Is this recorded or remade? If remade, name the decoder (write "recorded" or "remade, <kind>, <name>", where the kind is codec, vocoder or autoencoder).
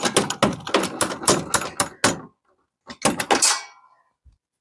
recorded